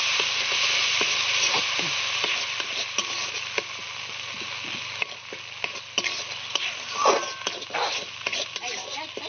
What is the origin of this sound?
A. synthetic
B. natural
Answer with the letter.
B